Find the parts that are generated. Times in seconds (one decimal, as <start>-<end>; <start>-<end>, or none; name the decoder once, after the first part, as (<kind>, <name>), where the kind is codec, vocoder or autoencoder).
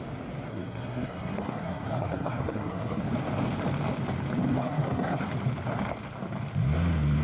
0.5-3.0 (codec, SNAC); 4.6-5.3